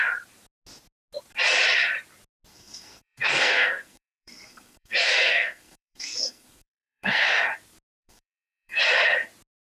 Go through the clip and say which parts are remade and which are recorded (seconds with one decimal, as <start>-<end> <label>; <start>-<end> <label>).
0.0-2.5 recorded; 2.5-7.5 remade; 7.5-8.0 recorded; 8.0-8.8 remade; 8.8-9.8 recorded